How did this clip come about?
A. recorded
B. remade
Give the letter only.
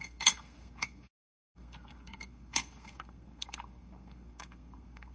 B